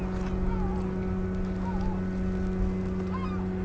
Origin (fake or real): real